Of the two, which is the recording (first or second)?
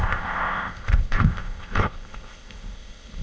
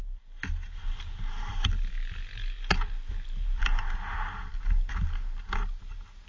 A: second